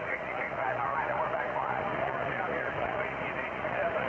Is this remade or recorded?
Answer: remade